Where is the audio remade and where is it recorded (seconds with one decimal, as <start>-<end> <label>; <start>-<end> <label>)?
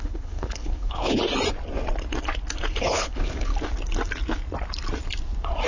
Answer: 0.0-1.2 remade; 1.2-2.8 recorded; 2.8-3.5 remade; 3.5-5.7 recorded